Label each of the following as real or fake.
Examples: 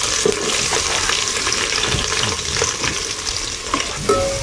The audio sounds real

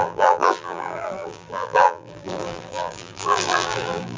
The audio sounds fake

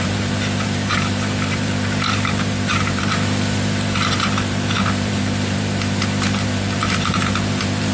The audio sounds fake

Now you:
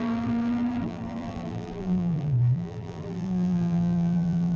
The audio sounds fake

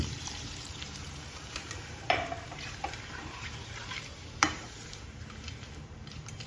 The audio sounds fake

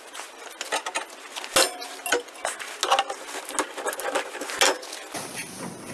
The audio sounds real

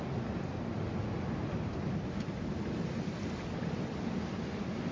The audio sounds fake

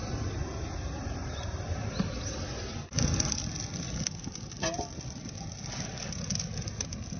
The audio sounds real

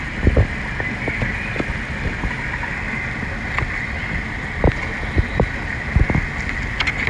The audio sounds real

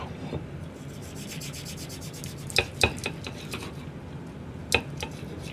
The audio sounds real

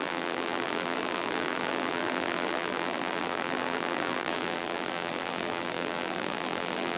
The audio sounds fake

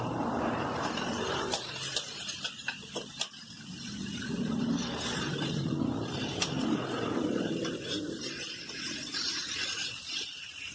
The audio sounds fake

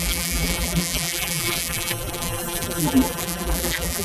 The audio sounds fake